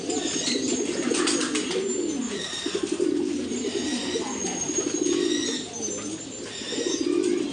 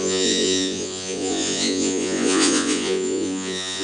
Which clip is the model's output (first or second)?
second